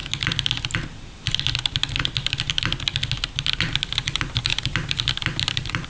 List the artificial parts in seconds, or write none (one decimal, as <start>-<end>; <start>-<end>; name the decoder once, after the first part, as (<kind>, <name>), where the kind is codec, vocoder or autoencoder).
3.5-4.5 (vocoder, BigVGAN v2); 5.4-5.9